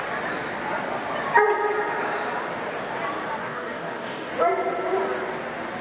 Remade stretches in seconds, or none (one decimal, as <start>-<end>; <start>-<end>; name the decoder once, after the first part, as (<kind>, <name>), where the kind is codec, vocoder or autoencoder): 3.4-4.3 (codec, DAC)